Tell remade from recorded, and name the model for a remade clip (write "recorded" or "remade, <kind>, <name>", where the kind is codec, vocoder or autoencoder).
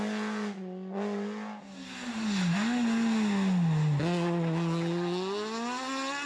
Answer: recorded